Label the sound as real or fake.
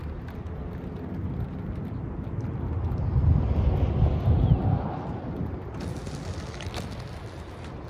real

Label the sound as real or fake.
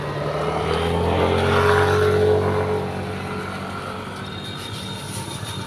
real